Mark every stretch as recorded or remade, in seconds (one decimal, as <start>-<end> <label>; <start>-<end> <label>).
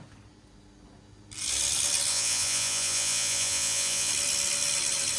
0.0-2.1 recorded; 2.1-4.1 remade; 4.1-5.2 recorded